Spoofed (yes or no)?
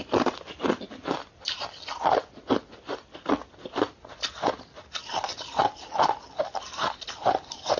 no